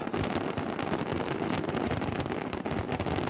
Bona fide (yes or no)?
yes